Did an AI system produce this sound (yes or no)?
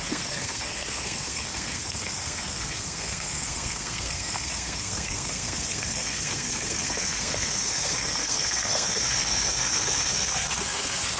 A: yes